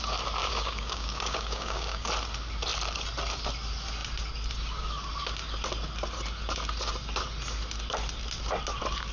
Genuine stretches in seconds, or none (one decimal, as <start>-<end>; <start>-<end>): 0.0-0.4; 2.1-9.1